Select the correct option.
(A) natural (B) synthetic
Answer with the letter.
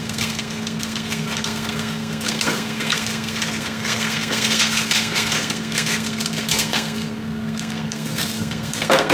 B